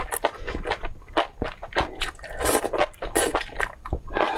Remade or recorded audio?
recorded